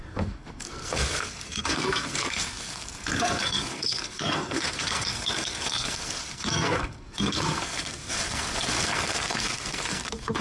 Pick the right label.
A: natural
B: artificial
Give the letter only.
B